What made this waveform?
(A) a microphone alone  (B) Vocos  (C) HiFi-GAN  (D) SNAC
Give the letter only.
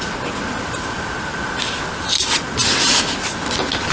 A